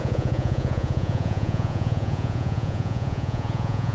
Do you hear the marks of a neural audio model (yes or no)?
yes